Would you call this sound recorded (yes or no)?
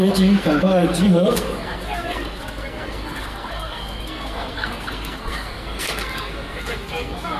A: no